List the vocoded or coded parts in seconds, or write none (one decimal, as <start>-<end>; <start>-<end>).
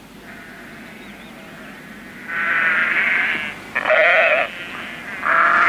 none